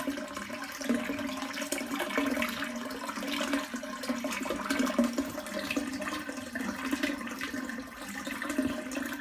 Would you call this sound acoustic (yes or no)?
yes